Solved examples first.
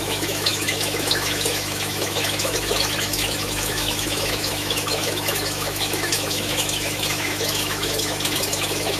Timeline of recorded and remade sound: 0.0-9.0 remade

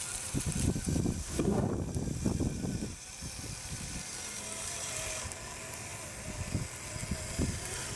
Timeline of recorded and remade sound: 0.0-1.2 recorded; 1.2-1.7 remade; 1.7-8.0 recorded

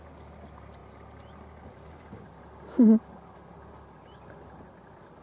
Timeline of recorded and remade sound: 0.0-5.2 recorded

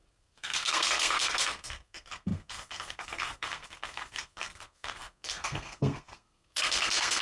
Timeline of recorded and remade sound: 0.0-7.2 remade

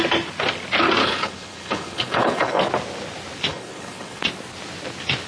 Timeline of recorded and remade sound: 0.0-1.0 recorded; 1.0-2.6 remade; 2.6-3.5 recorded; 3.5-4.2 remade; 4.2-5.3 recorded

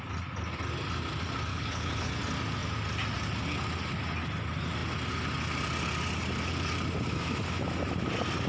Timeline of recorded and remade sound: 0.0-1.5 recorded; 1.5-2.1 remade; 2.1-8.5 recorded

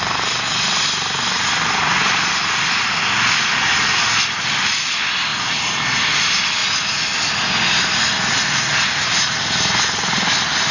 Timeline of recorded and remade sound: 0.0-10.7 recorded